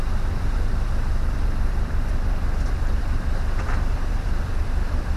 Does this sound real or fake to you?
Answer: fake